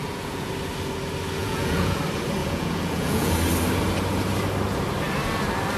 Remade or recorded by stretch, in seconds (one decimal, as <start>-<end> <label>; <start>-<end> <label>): 0.0-0.5 remade; 0.5-1.4 recorded; 1.4-2.0 remade; 2.0-2.4 recorded; 2.4-3.3 remade; 3.3-5.8 recorded